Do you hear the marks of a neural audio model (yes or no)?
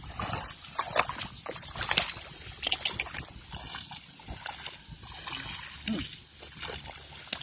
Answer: no